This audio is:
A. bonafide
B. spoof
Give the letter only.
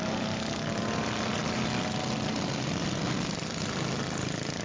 A